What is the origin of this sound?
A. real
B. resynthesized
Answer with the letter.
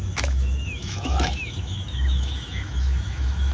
B